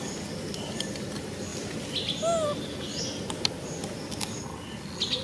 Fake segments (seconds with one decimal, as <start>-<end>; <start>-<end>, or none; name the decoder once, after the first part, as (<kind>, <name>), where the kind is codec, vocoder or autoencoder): none